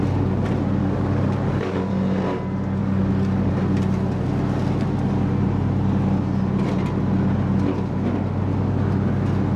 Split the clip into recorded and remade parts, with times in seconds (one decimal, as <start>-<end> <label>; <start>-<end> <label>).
0.0-0.8 recorded; 0.8-1.9 remade; 1.9-2.8 recorded; 2.8-3.5 remade; 3.5-9.6 recorded